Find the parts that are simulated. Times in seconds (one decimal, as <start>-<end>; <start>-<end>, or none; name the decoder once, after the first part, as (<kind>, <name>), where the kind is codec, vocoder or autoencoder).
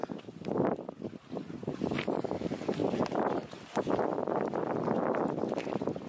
none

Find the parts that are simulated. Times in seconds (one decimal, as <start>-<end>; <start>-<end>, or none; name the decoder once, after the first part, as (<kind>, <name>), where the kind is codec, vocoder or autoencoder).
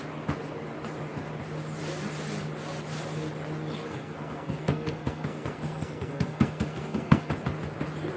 3.9-7.3 (codec, SNAC)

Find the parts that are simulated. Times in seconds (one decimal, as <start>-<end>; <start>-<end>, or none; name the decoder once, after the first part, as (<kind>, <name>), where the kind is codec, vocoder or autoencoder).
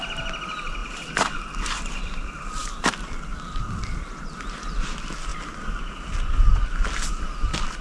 0.8-1.4 (vocoder, BigVGAN v2); 2.6-4.2; 5.3-6.5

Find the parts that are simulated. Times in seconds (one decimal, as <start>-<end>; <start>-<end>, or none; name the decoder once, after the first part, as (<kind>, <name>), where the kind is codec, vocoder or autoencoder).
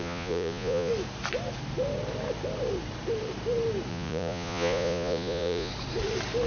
0.0-0.9 (vocoder, Vocos); 3.9-5.7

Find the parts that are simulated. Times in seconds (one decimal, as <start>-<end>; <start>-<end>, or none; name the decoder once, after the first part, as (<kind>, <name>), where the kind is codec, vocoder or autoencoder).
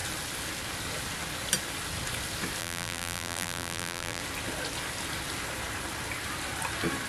2.6-4.2 (vocoder, BigVGAN v2)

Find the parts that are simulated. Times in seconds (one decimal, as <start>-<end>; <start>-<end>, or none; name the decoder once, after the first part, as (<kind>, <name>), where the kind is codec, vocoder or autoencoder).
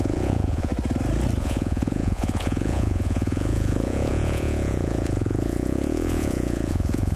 0.0-0.7 (vocoder, Vocos); 1.4-7.2